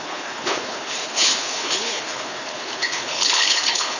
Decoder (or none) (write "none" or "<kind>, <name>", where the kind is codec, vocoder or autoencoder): codec, HILCodec